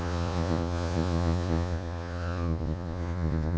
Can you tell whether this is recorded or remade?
remade